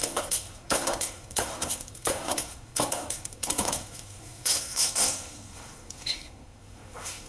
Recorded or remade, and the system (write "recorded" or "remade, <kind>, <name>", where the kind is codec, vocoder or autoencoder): remade, codec, SNAC